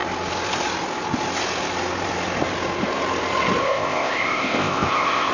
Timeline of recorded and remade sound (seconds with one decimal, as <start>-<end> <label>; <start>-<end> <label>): 0.0-3.6 recorded; 3.6-5.3 remade